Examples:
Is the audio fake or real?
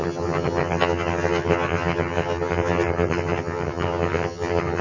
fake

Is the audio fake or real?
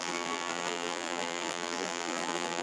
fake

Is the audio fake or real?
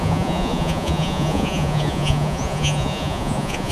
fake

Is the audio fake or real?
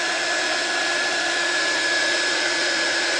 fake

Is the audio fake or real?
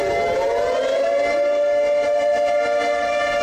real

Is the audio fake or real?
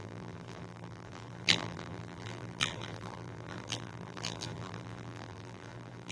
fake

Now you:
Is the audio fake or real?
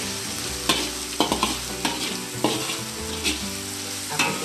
real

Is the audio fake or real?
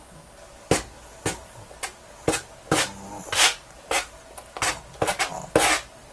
real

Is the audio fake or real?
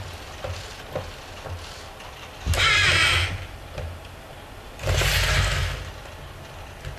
real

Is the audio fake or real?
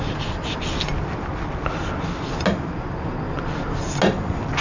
real